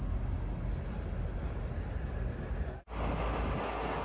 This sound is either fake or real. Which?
real